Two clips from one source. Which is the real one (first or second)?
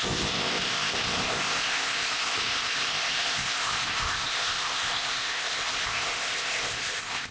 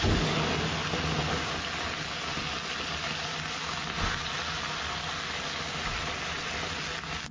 second